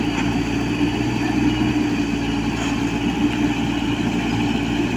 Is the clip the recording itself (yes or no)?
yes